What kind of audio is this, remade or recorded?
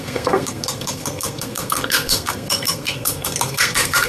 remade